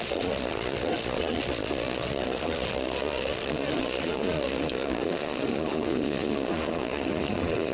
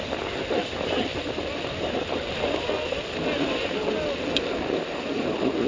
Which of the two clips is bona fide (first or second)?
second